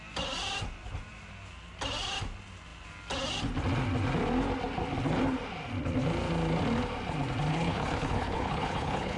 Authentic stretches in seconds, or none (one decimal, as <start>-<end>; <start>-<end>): 0.0-7.5